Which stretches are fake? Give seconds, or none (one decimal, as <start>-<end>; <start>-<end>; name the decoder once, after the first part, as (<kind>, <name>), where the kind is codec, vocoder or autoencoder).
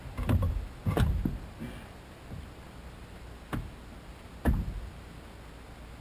none